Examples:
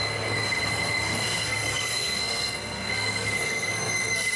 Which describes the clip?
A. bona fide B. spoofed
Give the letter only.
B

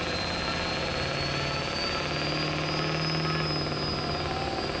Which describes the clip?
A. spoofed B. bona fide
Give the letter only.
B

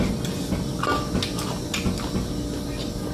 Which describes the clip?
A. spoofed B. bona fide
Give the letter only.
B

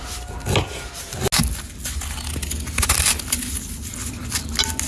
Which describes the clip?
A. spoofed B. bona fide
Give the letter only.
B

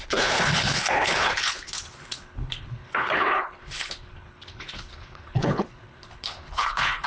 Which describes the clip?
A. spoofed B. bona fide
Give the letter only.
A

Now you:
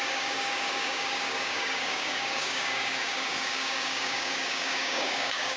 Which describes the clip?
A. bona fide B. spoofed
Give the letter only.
B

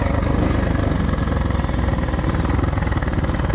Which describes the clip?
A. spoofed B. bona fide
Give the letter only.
B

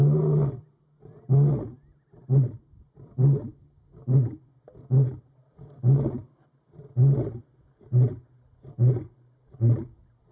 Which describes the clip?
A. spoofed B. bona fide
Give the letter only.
B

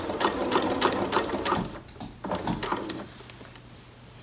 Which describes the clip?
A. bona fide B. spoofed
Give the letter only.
A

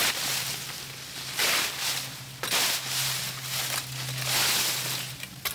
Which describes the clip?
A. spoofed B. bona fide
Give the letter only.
B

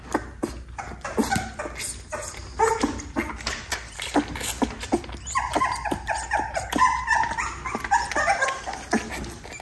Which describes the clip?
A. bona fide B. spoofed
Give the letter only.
A